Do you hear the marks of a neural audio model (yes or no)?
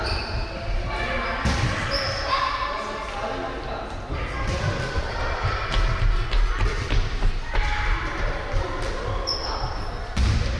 no